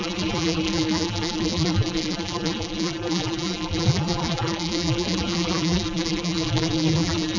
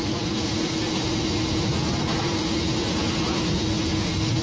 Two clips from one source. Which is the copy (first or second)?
first